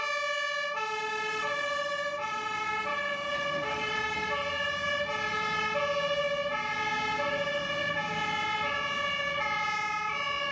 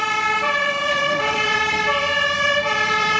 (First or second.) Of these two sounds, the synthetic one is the second